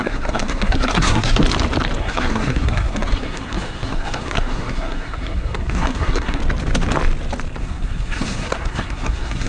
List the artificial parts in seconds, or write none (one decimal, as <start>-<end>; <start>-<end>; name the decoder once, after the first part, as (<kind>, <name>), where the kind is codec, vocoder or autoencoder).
0.0-1.4 (codec, SNAC); 2.0-6.4; 7.6-9.5

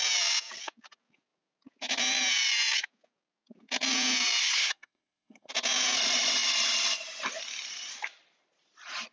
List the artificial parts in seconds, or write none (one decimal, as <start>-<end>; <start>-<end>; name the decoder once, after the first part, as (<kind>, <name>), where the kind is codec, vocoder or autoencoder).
4.4-5.5 (codec, SNAC)

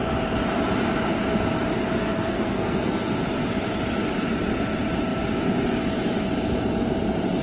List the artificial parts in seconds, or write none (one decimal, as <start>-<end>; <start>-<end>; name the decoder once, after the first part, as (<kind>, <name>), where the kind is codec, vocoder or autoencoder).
2.0-2.9 (codec, SNAC)

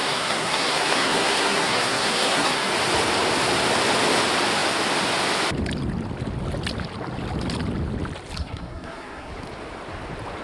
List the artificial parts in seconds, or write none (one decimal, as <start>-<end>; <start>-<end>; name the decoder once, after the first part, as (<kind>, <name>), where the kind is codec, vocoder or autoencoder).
0.0-2.7 (codec, SNAC); 8.4-9.3

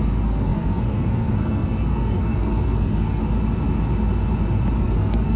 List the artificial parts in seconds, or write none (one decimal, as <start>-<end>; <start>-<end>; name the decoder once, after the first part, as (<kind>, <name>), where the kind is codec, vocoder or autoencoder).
0.0-3.2 (codec, SNAC); 4.8-5.4

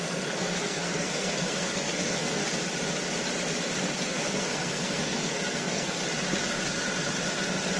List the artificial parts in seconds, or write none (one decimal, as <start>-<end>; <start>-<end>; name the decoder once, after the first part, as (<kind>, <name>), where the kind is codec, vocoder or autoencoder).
0.0-2.4 (codec, SNAC); 4.1-6.0

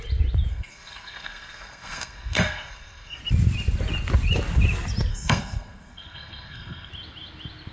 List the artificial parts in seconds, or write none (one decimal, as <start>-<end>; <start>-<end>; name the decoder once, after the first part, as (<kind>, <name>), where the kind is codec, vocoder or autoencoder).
0.5-3.2 (codec, SNAC); 5.1-6.9